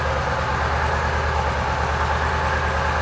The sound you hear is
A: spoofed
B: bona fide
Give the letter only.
B